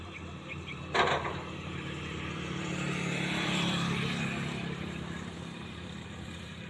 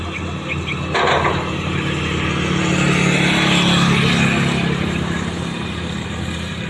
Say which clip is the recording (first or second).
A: second